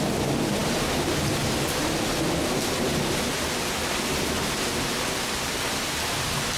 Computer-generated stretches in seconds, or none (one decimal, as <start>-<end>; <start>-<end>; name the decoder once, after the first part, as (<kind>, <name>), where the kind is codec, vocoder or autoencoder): none